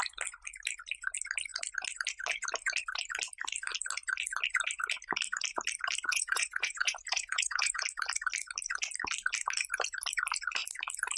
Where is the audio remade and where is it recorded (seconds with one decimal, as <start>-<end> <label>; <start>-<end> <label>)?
0.0-6.1 recorded; 6.1-7.8 remade; 7.8-11.2 recorded